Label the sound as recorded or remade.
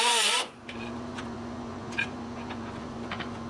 remade